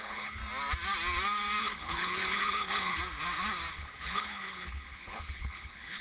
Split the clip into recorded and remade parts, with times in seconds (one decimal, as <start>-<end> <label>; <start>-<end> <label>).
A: 0.0-0.4 remade; 0.4-1.6 recorded; 1.6-3.0 remade; 3.0-3.7 recorded; 3.7-6.0 remade